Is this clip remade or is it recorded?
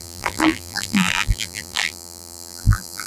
remade